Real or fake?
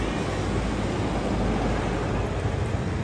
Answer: real